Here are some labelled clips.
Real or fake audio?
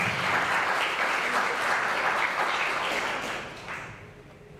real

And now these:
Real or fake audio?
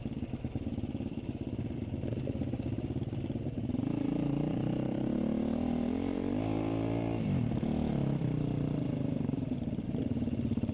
fake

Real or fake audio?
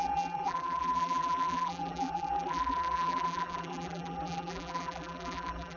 fake